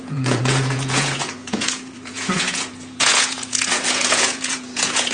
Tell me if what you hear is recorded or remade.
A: remade